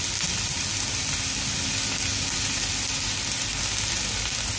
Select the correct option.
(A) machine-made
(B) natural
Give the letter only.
B